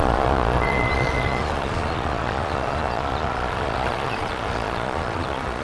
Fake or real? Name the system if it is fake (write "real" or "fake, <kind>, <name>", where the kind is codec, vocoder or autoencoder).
fake, vocoder, Vocos